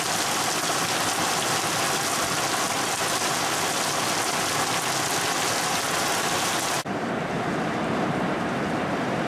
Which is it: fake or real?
real